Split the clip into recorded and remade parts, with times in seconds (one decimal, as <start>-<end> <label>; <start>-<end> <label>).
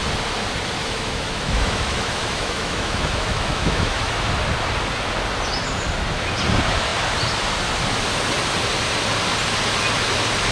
0.0-0.8 recorded; 0.8-4.1 remade; 4.1-10.5 recorded